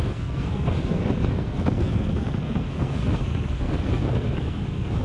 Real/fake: fake